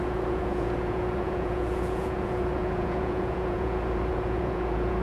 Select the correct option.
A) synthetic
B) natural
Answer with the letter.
A